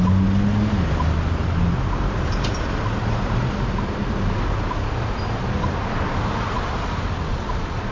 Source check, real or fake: real